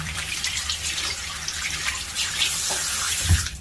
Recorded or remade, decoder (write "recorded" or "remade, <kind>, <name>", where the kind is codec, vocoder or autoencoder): remade, vocoder, BigVGAN v2